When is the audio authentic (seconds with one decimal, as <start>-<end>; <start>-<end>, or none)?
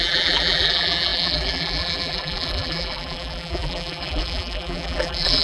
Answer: none